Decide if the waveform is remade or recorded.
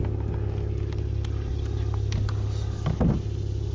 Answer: recorded